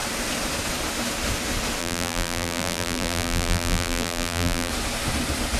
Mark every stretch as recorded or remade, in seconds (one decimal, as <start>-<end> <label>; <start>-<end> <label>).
0.0-1.8 recorded; 1.8-4.7 remade; 4.7-5.6 recorded